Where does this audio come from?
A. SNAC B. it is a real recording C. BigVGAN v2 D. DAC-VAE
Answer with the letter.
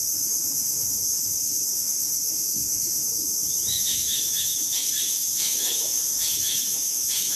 D